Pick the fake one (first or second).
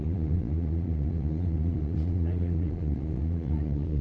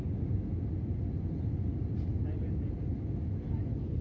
first